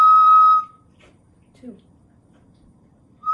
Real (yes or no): no